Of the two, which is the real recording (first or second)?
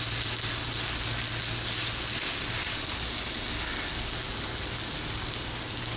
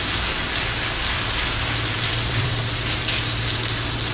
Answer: first